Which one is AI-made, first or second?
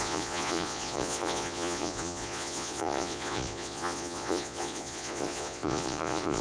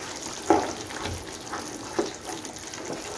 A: first